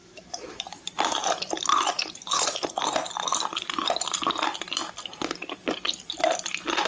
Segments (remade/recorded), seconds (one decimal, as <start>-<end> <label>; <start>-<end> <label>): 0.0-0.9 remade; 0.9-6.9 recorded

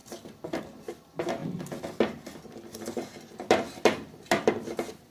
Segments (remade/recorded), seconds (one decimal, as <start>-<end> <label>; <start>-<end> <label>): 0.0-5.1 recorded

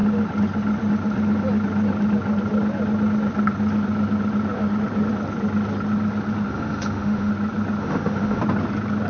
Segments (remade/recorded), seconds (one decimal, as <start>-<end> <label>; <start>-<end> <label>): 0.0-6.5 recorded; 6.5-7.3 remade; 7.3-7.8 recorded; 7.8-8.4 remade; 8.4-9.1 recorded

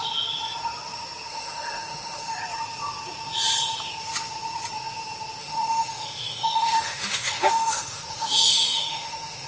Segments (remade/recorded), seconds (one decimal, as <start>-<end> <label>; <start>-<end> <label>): 0.0-1.3 recorded; 1.3-2.4 remade; 2.4-5.4 recorded; 5.4-9.5 remade

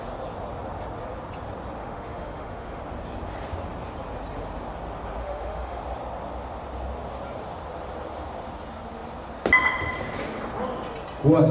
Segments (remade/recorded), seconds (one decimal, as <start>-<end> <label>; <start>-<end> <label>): 0.0-1.8 recorded; 1.8-2.8 remade; 2.8-5.2 recorded; 5.2-5.8 remade; 5.8-11.5 recorded